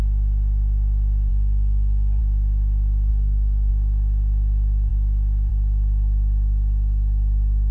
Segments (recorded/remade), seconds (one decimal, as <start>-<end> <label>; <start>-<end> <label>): 0.0-3.1 recorded; 3.1-3.7 remade; 3.7-7.7 recorded